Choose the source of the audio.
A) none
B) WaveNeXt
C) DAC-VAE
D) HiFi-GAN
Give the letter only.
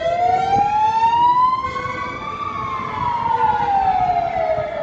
A